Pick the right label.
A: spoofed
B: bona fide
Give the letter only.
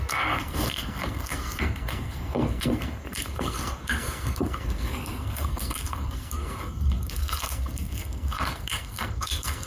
A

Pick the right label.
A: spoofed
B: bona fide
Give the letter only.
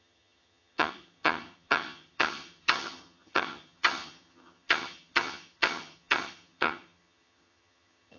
A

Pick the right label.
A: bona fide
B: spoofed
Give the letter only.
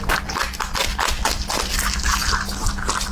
A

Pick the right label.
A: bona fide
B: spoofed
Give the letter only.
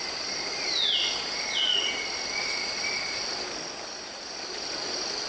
A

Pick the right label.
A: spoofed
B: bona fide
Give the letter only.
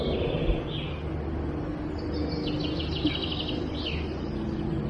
B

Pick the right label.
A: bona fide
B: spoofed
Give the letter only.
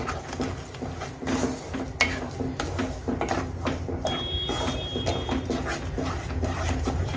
A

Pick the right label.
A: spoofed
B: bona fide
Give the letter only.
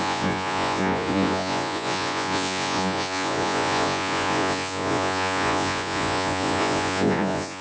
A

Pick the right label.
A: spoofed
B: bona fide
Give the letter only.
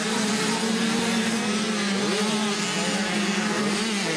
B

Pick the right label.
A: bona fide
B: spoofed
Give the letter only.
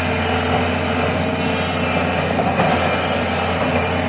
A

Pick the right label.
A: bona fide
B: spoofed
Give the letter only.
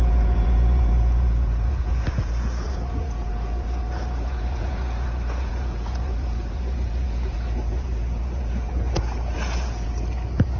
B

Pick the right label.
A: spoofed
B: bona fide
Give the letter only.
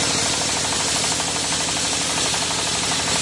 B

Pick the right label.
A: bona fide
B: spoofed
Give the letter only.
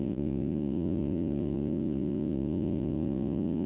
B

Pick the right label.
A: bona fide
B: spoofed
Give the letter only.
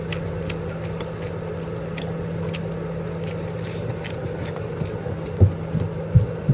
A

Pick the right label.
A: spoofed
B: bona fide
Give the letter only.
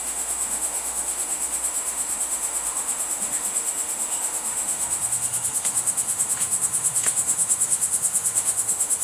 A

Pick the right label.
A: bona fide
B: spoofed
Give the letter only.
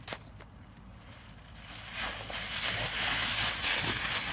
A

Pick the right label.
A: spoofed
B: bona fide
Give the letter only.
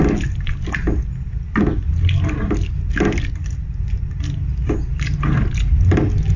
B